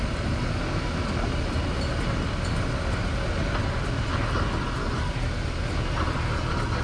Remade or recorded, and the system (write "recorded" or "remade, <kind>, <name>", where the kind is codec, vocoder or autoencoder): recorded